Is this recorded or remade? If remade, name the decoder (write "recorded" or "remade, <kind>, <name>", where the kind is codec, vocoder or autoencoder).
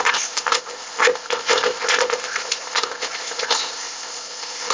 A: remade, codec, ZipCodec